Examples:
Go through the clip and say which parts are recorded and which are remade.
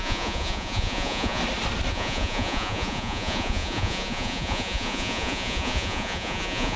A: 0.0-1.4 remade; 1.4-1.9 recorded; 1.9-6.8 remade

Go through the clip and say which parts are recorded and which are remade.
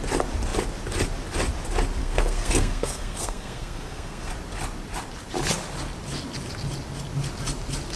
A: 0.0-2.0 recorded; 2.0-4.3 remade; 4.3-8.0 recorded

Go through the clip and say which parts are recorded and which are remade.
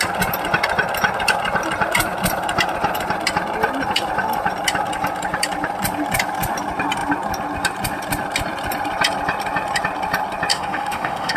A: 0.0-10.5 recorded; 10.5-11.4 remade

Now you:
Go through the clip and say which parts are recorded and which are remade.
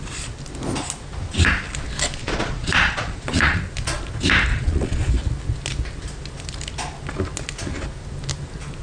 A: 0.0-2.2 recorded; 2.2-3.6 remade; 3.6-4.5 recorded; 4.5-5.1 remade; 5.1-8.8 recorded